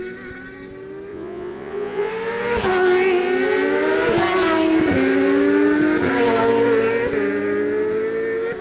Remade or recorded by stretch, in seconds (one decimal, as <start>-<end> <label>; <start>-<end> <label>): 0.0-1.1 recorded; 1.1-2.1 remade; 2.1-8.6 recorded

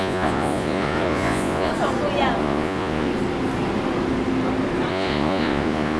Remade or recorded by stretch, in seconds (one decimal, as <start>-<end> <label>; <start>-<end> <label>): 0.0-1.7 remade; 1.7-2.4 recorded; 2.4-3.1 remade; 3.1-4.9 recorded; 4.9-6.0 remade

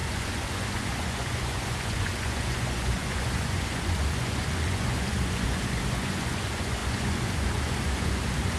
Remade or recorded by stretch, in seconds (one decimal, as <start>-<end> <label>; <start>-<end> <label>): 0.0-8.6 remade

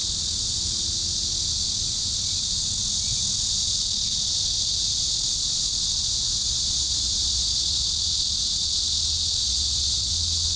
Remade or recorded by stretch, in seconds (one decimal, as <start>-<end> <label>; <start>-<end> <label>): 0.0-6.4 recorded; 6.4-7.9 remade; 7.9-9.4 recorded; 9.4-10.1 remade; 10.1-10.6 recorded